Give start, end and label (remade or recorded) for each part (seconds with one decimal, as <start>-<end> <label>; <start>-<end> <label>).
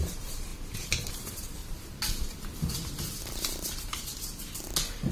0.0-1.6 remade; 1.6-5.1 recorded